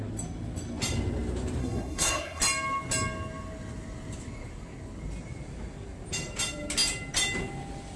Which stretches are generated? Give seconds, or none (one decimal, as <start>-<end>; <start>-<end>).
1.6-2.4